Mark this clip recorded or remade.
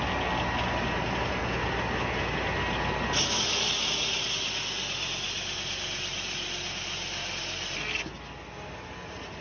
recorded